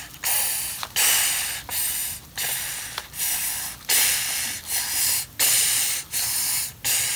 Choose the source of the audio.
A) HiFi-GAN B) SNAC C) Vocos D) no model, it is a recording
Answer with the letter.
D